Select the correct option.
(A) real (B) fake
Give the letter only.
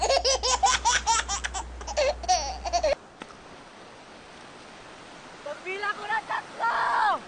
A